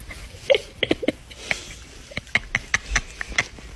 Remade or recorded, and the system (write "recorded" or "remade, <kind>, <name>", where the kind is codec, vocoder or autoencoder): recorded